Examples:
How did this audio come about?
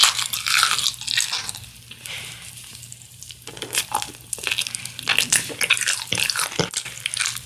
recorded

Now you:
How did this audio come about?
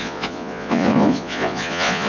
remade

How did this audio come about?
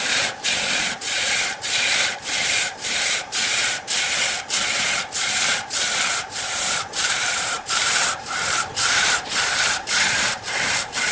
remade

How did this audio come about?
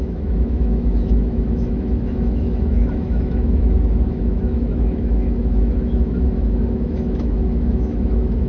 remade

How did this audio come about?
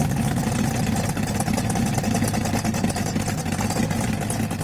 recorded